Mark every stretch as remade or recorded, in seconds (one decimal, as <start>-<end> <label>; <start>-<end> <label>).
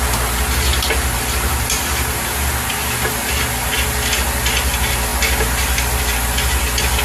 0.0-0.7 recorded; 0.7-2.2 remade; 2.2-7.0 recorded